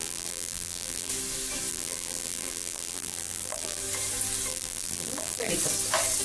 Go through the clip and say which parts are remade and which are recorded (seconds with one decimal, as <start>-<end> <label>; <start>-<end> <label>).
0.0-1.1 remade; 1.1-1.7 recorded; 1.7-3.8 remade; 3.8-4.5 recorded; 4.5-5.5 remade; 5.5-6.2 recorded